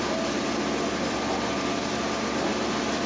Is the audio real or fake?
real